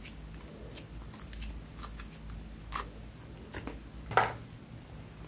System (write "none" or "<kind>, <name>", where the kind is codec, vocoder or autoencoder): none